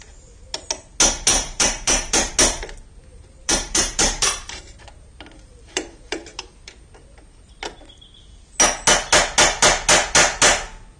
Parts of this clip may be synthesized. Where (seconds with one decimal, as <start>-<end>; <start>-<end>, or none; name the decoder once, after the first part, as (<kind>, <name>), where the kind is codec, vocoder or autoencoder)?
1.3-2.3 (vocoder, BigVGAN v2); 3.1-7.6